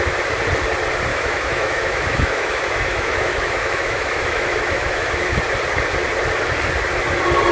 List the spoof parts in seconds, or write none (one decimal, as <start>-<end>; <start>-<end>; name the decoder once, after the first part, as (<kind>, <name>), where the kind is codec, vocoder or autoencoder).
1.1-5.4 (autoencoder, DAC-VAE)